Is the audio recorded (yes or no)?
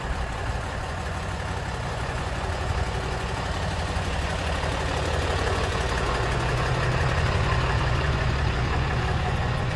no